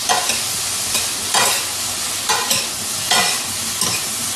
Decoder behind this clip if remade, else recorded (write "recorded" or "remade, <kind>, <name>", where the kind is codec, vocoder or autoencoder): recorded